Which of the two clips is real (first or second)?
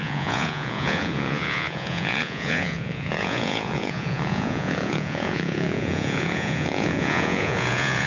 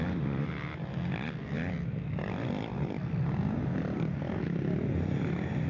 second